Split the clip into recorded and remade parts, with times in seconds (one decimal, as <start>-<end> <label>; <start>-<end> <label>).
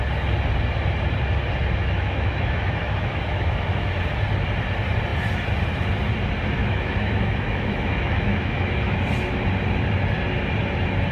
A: 0.0-1.8 recorded; 1.8-3.9 remade; 3.9-6.6 recorded; 6.6-9.0 remade; 9.0-11.1 recorded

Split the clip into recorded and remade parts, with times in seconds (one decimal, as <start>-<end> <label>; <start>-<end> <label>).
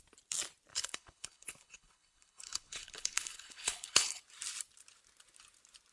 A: 0.0-0.7 recorded; 0.7-4.2 remade; 4.2-5.9 recorded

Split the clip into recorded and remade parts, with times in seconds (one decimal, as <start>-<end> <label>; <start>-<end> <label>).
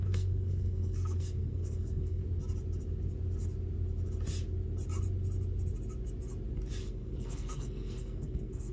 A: 0.0-2.2 remade; 2.2-6.8 recorded; 6.8-8.7 remade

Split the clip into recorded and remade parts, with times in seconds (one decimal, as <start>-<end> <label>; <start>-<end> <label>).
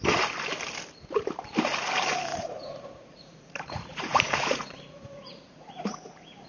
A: 0.0-2.3 recorded; 2.3-6.5 remade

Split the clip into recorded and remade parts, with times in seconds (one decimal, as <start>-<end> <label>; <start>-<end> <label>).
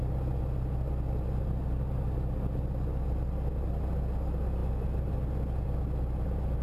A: 0.0-6.6 recorded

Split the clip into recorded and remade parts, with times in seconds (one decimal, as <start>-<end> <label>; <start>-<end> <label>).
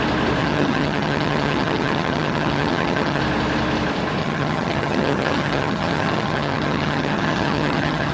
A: 0.0-0.4 recorded; 0.4-3.2 remade; 3.2-4.2 recorded; 4.2-8.1 remade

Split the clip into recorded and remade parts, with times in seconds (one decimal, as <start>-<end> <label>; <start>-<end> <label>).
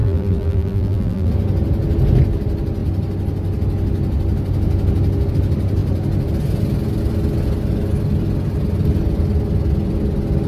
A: 0.0-1.3 remade; 1.3-10.5 recorded